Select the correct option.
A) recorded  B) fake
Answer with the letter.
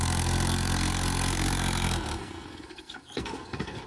B